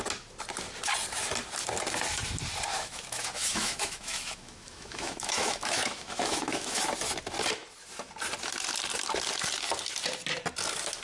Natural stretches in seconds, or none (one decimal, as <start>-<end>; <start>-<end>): 0.0-2.7; 6.8-11.0